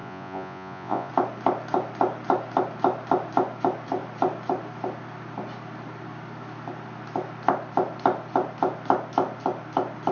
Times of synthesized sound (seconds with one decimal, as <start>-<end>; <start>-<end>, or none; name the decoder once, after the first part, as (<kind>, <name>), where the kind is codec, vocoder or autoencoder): 0.0-1.1 (vocoder, Vocos)